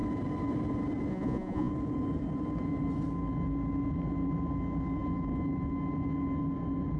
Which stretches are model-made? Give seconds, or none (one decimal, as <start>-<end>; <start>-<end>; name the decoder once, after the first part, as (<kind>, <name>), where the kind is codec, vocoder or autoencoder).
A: 1.1-1.7 (vocoder, Vocos)